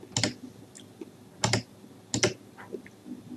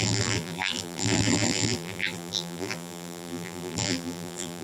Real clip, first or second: first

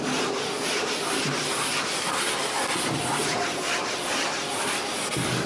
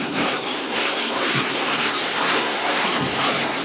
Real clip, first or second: first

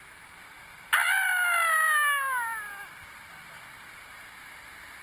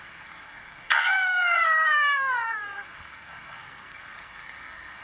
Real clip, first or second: first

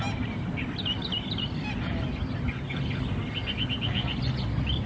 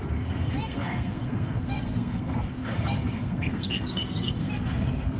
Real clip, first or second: first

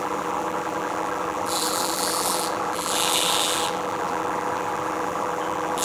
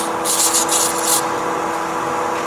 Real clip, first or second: second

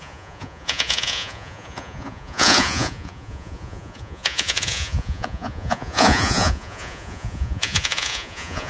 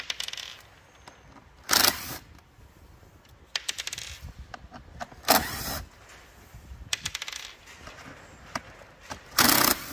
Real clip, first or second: second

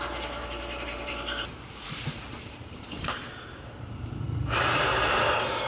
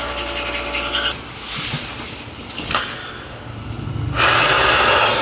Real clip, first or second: second